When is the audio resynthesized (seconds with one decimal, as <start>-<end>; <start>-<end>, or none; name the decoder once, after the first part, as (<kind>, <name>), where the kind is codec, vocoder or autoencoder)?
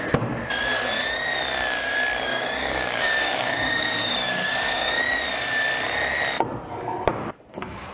2.3-5.0 (codec, DAC); 7.1-7.9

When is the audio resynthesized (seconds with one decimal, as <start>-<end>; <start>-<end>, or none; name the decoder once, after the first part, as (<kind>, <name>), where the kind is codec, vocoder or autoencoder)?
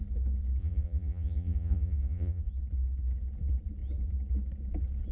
0.6-2.5 (vocoder, Vocos)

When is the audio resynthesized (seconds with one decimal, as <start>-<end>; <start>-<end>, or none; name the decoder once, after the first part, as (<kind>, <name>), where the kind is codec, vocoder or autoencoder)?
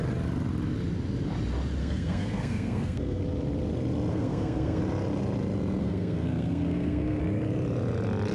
1.8-3.2 (codec, SNAC); 4.1-4.8; 5.8-7.2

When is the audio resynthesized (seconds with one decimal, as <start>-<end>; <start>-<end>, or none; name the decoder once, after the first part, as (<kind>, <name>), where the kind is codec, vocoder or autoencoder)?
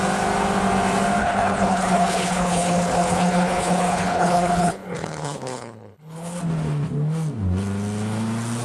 1.2-6.4 (codec, HILCodec)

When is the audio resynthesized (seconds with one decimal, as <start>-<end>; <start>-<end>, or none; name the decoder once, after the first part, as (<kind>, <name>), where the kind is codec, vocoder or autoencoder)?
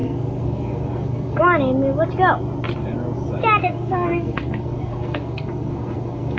0.0-1.4 (codec, SNAC); 3.6-6.4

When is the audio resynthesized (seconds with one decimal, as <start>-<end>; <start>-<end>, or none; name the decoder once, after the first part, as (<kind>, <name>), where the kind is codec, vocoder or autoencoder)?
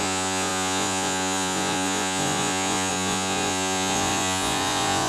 0.0-5.1 (vocoder, Vocos)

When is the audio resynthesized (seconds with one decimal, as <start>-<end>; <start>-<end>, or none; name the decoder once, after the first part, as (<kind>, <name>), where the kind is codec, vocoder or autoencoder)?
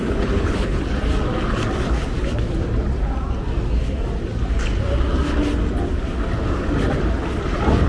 0.0-0.8 (codec, HILCodec)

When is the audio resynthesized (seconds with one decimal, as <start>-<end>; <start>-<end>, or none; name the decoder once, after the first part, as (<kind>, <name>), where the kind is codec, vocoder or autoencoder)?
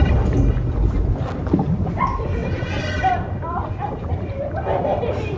none